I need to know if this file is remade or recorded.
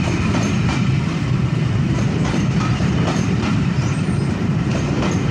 remade